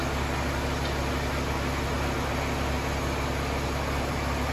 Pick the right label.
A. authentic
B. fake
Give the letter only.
A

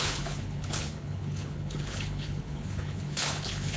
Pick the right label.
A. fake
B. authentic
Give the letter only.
A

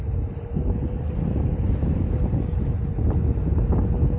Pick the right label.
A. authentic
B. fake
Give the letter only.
A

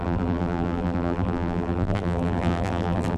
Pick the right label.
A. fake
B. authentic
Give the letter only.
A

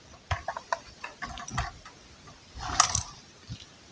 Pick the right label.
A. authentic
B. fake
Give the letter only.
A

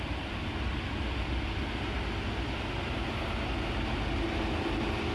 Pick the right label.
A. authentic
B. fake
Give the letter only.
A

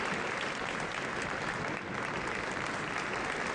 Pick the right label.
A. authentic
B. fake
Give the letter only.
A